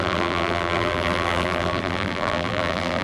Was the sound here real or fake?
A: fake